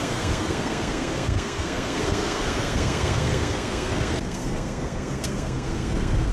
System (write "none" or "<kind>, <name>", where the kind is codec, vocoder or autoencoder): codec, SNAC